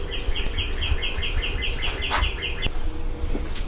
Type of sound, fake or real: real